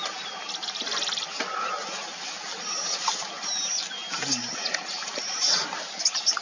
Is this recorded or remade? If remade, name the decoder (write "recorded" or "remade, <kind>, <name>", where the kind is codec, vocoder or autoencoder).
recorded